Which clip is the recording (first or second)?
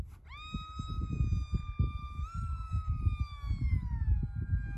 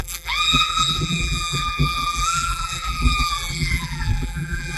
first